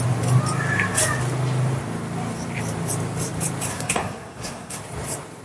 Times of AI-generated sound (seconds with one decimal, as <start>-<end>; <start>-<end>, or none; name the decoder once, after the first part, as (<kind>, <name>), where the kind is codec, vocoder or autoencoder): 3.7-4.8 (codec, SNAC)